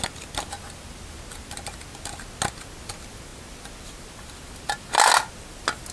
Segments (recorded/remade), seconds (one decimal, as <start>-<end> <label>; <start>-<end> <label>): 0.0-5.9 recorded